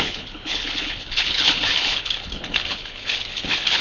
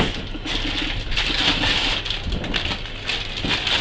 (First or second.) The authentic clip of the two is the second